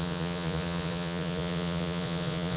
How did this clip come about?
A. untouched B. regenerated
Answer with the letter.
B